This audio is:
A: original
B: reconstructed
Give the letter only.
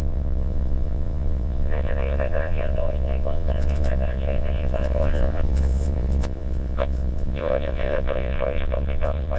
B